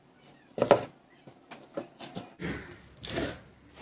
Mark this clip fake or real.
real